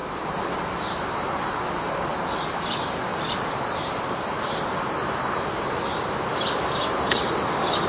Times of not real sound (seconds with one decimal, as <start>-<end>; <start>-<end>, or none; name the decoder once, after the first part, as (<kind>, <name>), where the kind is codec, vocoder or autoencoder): 0.7-2.1 (vocoder, BigVGAN v2); 6.2-7.9